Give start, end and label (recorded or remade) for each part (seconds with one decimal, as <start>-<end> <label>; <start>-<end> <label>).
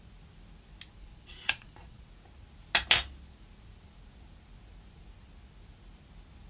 0.0-1.0 recorded; 1.0-2.1 remade; 2.1-6.5 recorded